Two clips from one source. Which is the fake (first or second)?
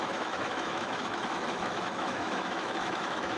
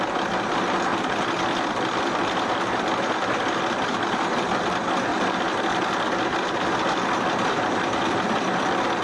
first